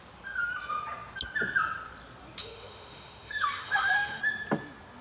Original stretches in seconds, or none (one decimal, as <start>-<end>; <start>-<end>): 0.0-2.4; 4.2-5.0